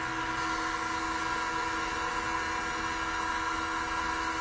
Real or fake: real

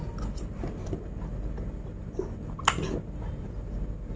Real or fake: real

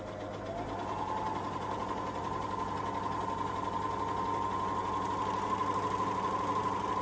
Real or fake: real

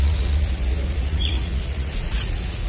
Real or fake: fake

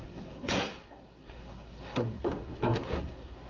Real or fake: fake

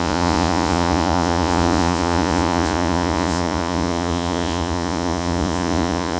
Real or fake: fake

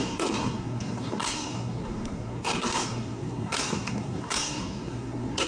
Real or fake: fake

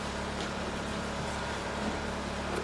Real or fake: fake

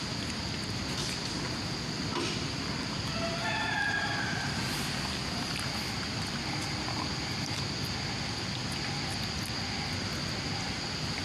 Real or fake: real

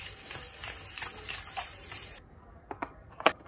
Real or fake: fake